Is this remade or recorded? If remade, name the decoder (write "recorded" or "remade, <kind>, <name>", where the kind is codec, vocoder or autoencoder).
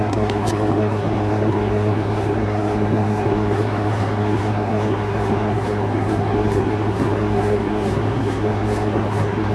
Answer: remade, codec, SNAC